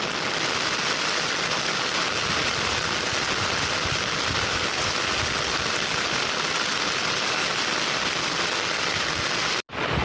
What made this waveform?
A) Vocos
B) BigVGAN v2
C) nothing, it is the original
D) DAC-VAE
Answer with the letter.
C